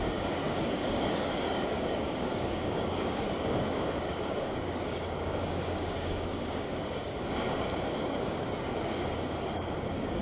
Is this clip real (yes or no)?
no